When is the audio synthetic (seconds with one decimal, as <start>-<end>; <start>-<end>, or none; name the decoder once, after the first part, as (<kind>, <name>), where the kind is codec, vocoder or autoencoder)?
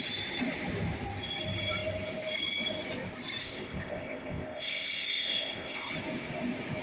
3.4-5.9 (codec, ZipCodec)